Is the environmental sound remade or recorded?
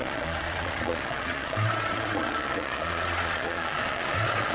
remade